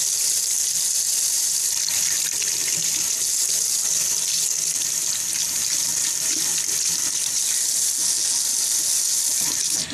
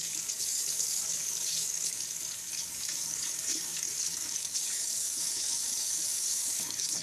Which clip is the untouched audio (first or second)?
first